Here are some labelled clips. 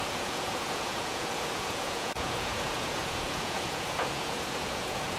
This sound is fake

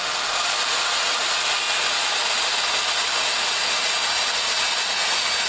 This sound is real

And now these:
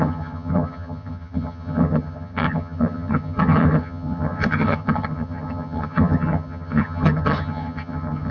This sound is fake